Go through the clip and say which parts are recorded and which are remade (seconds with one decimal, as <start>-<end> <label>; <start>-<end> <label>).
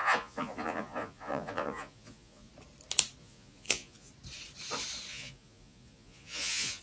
0.0-2.5 remade; 2.5-3.2 recorded; 3.2-4.1 remade; 4.1-5.1 recorded; 5.1-6.8 remade